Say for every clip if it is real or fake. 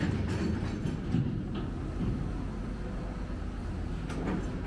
real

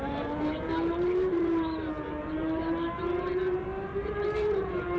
fake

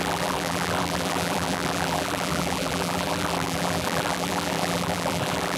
fake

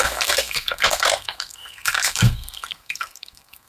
fake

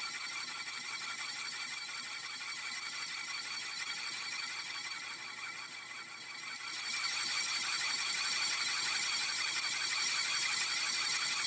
fake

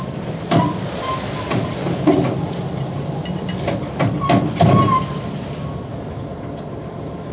real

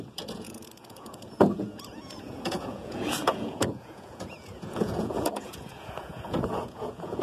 fake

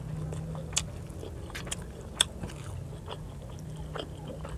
real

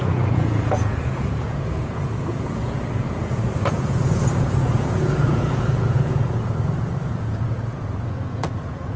fake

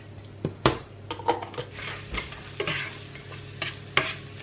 real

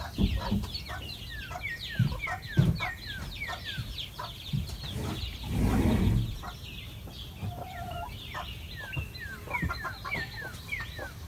real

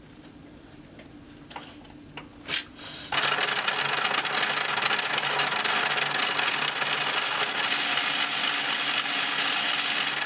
real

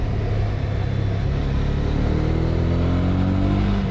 real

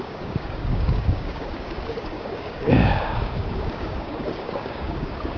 fake